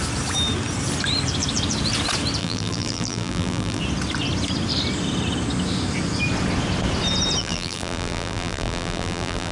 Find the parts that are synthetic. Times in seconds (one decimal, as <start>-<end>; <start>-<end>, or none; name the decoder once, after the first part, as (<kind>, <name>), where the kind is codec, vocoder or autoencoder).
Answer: 2.4-3.8 (vocoder, BigVGAN v2); 7.4-9.5